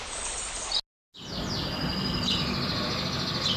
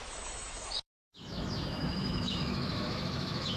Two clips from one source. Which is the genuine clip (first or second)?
first